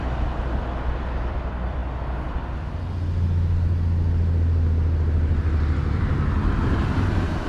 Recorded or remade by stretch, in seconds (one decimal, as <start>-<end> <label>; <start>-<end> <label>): 0.0-7.5 recorded